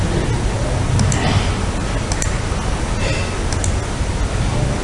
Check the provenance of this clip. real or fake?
real